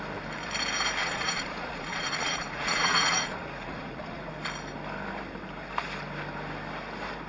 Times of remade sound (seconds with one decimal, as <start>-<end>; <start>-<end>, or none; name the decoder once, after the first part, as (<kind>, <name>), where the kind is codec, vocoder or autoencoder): 1.0-4.3 (vocoder, Vocos)

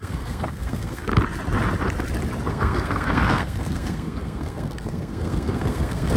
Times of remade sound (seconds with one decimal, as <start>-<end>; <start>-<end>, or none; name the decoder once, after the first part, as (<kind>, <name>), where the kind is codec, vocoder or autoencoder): 0.0-1.1 (codec, SNAC); 2.5-6.2

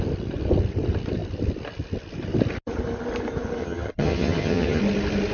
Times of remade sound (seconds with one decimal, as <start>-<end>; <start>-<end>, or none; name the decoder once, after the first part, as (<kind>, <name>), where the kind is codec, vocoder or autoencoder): 3.6-4.8 (vocoder, HiFi-GAN)

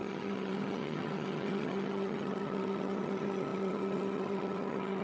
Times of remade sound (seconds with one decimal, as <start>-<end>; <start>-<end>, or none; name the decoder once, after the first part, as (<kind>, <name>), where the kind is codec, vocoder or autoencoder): 0.0-5.0 (vocoder, HiFi-GAN)

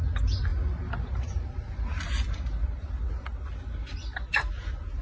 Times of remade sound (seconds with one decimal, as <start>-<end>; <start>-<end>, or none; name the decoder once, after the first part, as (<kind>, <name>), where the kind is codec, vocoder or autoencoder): 3.8-4.5 (vocoder, BigVGAN v2)

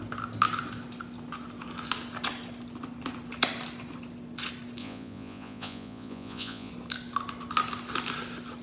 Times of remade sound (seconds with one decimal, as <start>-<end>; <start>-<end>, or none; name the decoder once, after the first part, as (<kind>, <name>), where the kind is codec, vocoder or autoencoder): 4.8-6.7 (vocoder, Vocos)

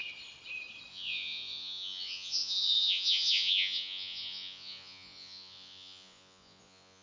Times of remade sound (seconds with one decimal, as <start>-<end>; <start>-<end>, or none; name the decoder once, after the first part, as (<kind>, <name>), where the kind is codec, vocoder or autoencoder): 0.9-7.0 (vocoder, Vocos)